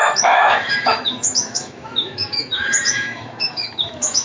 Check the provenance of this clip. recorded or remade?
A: remade